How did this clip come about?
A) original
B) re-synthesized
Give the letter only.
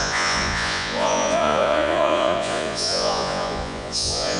B